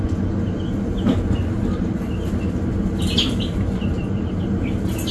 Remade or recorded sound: recorded